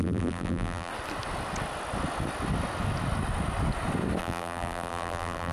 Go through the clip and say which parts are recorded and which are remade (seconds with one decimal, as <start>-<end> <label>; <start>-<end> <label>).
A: 0.0-0.9 remade; 0.9-4.2 recorded; 4.2-5.5 remade